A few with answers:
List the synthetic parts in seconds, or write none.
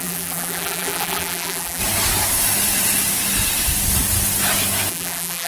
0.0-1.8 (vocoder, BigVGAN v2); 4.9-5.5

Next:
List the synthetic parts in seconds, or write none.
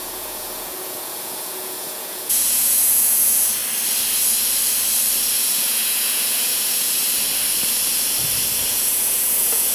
0.0-3.6 (vocoder, Vocos); 5.3-7.0; 8.7-9.7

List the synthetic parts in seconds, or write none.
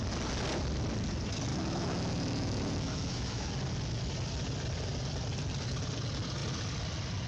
1.5-3.5 (autoencoder, DAC-VAE)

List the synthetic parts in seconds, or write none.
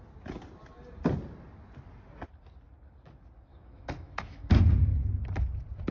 3.5-4.5 (autoencoder, DAC-VAE)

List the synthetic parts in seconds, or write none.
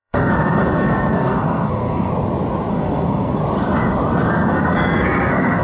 0.0-2.1 (codec, SNAC); 2.7-3.4; 4.3-5.6